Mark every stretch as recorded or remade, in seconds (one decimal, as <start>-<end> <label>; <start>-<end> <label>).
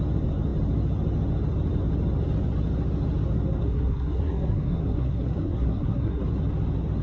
0.0-3.6 recorded; 3.6-6.2 remade; 6.2-7.0 recorded